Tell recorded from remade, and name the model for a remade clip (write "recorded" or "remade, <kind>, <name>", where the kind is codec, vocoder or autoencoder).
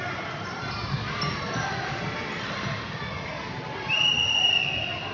recorded